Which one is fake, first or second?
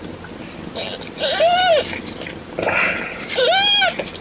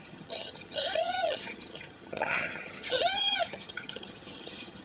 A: second